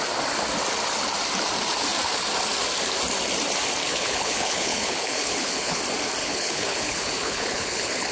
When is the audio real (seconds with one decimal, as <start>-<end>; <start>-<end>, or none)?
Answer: 0.0-3.8; 5.8-6.2